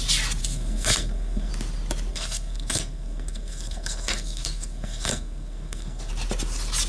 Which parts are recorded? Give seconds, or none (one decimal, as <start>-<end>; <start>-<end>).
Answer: 0.0-0.4; 1.5-2.1; 6.1-6.9